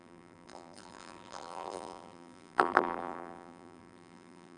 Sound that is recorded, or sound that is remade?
remade